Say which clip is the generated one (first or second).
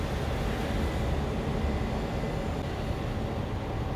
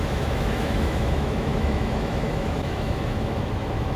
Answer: second